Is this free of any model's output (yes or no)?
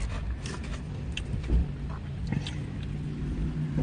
yes